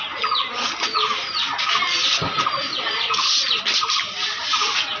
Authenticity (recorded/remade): recorded